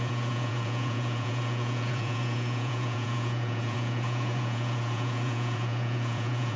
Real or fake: fake